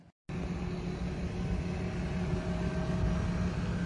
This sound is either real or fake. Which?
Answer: real